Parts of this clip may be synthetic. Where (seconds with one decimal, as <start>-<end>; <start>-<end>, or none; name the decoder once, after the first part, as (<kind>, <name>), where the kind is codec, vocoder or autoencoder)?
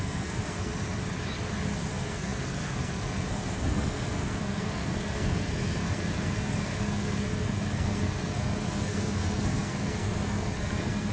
0.0-0.7 (codec, SNAC); 1.9-11.1